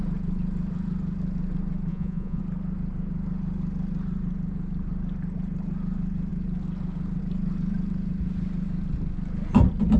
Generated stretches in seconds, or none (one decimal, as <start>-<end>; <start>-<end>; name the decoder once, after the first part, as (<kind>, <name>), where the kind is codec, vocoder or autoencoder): 1.9-2.4 (vocoder, Vocos)